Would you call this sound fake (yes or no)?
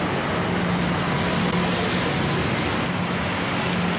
no